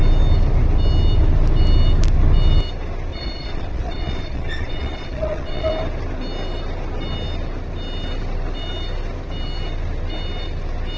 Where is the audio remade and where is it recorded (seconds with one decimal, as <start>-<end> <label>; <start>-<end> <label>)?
0.0-3.1 recorded; 3.1-5.7 remade; 5.7-11.0 recorded